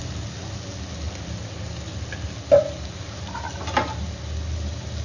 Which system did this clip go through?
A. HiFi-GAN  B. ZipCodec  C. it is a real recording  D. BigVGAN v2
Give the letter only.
C